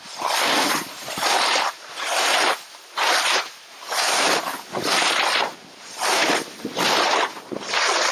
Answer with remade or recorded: recorded